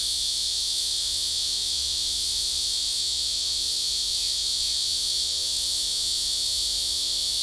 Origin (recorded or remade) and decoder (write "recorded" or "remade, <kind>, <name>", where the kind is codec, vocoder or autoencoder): remade, vocoder, Vocos